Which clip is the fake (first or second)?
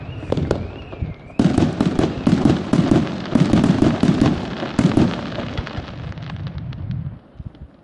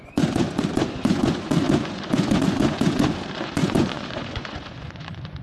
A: second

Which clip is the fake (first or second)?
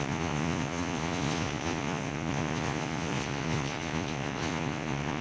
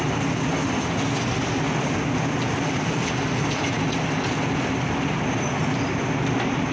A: first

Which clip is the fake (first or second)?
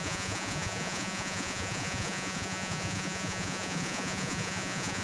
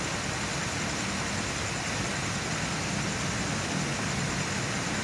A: first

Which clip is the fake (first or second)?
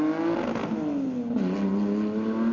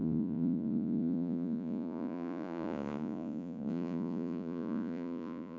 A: second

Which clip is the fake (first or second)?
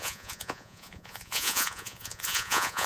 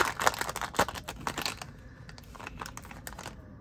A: first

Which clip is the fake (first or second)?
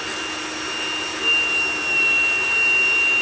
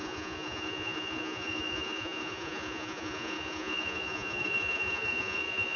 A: second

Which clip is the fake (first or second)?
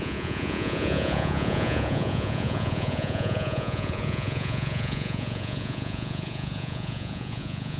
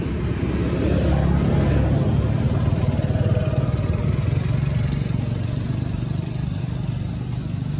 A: first